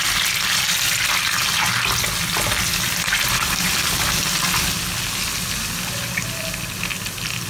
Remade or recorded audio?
recorded